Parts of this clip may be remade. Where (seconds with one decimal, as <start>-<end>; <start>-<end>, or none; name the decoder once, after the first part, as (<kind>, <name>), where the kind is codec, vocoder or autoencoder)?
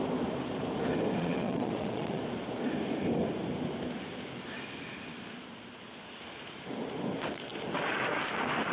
1.2-2.2 (vocoder, Vocos)